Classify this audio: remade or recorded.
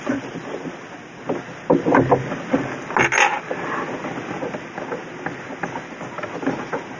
recorded